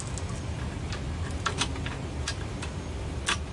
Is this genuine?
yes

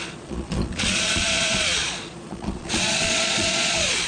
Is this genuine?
no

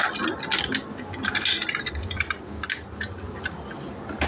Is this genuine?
yes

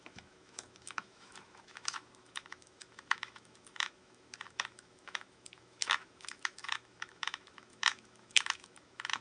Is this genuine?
no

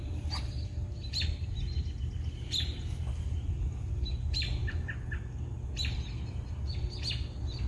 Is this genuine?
yes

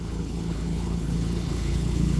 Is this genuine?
no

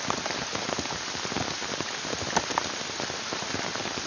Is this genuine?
yes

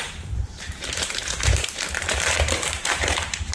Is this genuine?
no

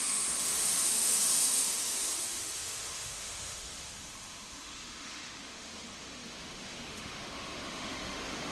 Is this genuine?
no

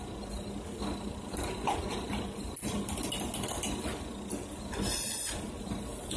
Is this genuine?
yes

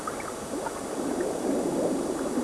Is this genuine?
yes